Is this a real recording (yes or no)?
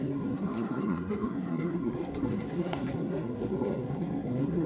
no